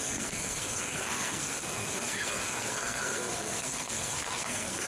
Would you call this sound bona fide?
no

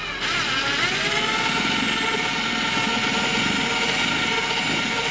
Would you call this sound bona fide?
yes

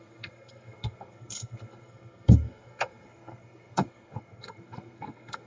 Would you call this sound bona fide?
no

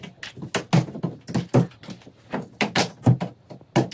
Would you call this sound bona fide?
yes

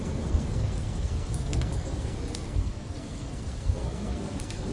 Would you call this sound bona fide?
no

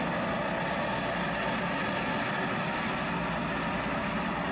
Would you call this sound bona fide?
yes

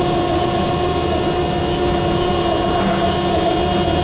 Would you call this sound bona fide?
yes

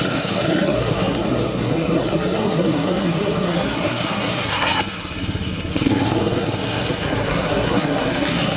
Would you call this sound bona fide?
no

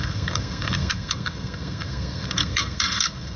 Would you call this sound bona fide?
no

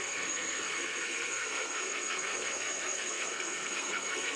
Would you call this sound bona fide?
no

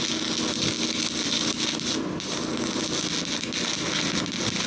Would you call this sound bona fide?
yes